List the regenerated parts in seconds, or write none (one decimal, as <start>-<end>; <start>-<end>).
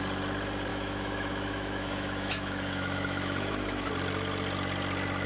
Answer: 0.7-3.9